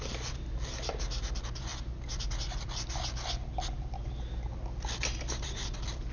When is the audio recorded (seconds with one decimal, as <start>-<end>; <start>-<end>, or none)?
0.0-6.1